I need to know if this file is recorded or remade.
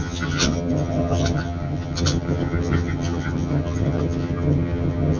remade